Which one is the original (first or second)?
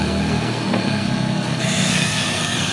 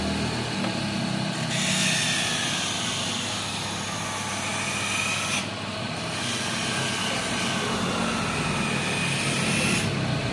second